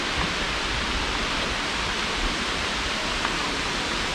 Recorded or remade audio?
recorded